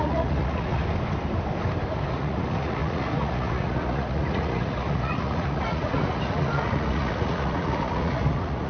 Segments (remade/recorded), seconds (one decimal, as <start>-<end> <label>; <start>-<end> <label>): 0.0-0.8 remade; 0.8-2.1 recorded; 2.1-8.7 remade